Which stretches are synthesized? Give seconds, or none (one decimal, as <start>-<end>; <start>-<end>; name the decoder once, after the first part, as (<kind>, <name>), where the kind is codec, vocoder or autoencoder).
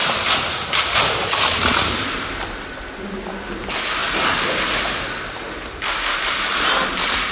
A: 4.0-5.1 (vocoder, BigVGAN v2)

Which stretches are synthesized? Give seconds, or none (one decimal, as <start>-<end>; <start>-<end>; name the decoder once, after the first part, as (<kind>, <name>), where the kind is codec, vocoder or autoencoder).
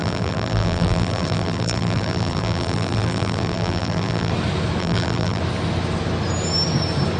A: 0.0-4.3 (vocoder, BigVGAN v2); 4.8-5.4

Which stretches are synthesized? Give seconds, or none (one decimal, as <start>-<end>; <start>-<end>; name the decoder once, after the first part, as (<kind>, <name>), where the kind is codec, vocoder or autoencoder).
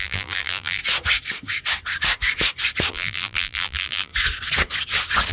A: 0.0-0.8 (vocoder, BigVGAN v2); 2.9-4.1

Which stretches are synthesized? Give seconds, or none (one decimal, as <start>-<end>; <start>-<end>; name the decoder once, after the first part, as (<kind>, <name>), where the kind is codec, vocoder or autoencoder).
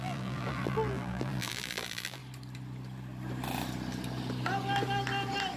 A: 0.0-2.2 (vocoder, BigVGAN v2)